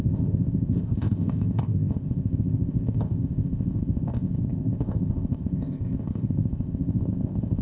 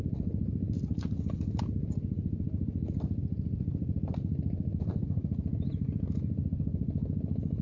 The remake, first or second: first